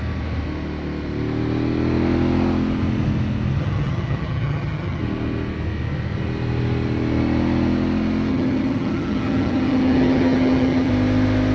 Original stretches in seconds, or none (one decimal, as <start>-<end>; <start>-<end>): 0.0-3.6; 5.0-8.3; 10.9-11.5